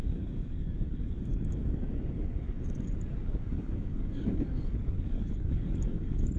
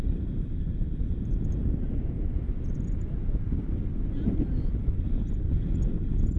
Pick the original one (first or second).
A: second